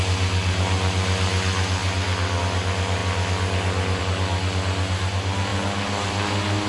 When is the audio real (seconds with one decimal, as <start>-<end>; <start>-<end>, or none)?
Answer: 0.0-6.7